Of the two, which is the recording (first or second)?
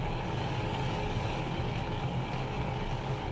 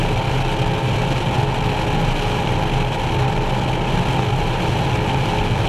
second